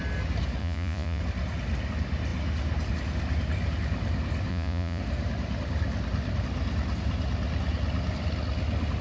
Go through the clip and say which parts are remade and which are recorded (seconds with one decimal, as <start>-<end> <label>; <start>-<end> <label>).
0.0-0.6 recorded; 0.6-1.2 remade; 1.2-4.5 recorded; 4.5-5.0 remade; 5.0-9.0 recorded